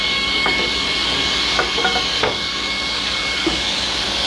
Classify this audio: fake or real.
fake